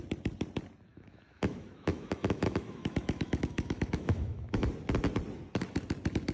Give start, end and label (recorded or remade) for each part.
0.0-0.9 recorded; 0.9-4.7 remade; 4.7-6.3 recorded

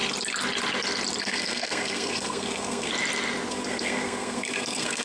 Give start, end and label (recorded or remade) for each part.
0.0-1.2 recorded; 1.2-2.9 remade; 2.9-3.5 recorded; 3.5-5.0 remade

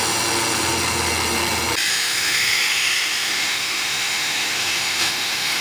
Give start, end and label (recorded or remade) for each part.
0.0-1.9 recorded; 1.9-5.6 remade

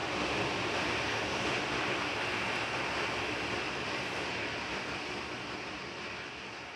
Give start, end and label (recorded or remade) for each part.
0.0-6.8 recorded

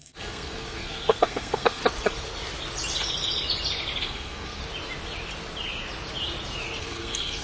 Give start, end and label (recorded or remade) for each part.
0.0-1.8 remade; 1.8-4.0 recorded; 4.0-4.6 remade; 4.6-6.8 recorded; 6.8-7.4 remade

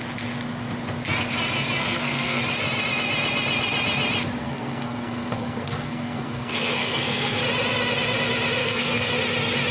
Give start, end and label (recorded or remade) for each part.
0.0-1.8 recorded; 1.8-2.4 remade; 2.4-4.4 recorded; 4.4-7.4 remade; 7.4-8.6 recorded; 8.6-9.1 remade; 9.1-9.7 recorded